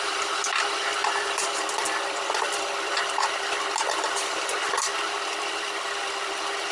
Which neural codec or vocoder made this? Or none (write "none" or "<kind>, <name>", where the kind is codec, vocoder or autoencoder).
vocoder, BigVGAN v2